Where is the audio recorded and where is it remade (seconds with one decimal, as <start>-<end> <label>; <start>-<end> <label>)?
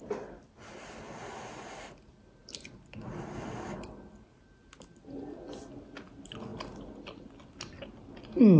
0.0-8.6 recorded